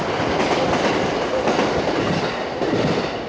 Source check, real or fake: real